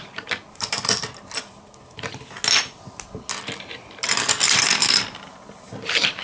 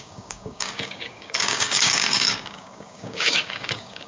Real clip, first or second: first